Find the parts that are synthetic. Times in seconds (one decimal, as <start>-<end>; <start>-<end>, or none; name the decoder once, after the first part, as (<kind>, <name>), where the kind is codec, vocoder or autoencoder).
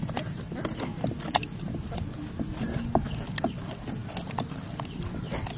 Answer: none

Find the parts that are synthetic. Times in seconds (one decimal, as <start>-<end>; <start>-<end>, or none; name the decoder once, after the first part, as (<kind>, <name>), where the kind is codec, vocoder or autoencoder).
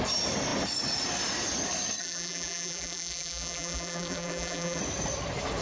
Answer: 2.0-4.8 (vocoder, BigVGAN v2)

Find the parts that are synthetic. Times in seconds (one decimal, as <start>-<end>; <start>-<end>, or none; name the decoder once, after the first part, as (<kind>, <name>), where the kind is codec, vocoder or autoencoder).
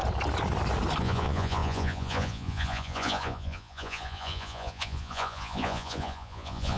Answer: 1.0-6.8 (vocoder, Vocos)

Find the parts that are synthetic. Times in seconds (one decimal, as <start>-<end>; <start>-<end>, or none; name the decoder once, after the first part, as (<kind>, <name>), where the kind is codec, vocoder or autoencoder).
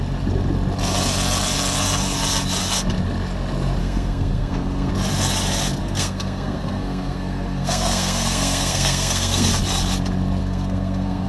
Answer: 3.8-4.9 (codec, SNAC); 5.8-9.5; 10.4-11.3